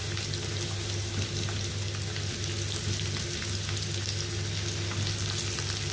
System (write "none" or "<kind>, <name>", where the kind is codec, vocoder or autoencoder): none